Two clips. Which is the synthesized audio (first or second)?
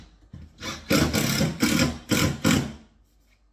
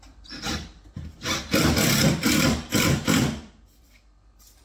second